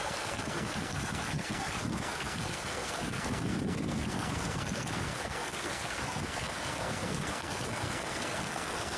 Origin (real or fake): fake